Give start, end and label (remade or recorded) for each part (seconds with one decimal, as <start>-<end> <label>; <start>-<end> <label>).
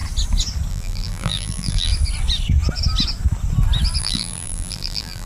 0.0-0.7 recorded; 0.7-1.9 remade; 1.9-4.0 recorded; 4.0-5.3 remade